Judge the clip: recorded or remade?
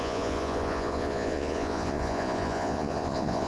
remade